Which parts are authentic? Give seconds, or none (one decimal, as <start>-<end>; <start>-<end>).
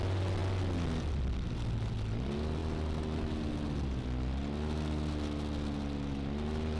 0.0-6.8